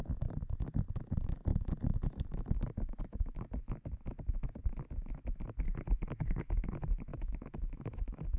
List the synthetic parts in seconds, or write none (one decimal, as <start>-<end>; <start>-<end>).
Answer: 1.5-2.2; 7.1-8.0